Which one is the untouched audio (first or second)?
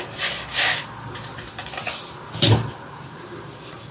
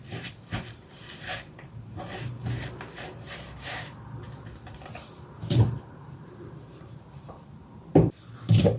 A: first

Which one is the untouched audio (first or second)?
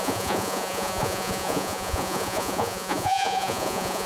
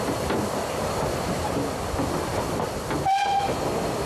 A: second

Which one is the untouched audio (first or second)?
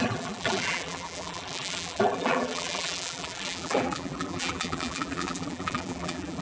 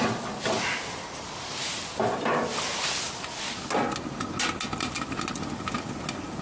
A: second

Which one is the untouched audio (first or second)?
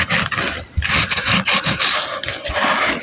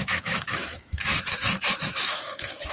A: first